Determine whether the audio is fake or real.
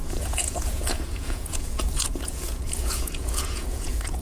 fake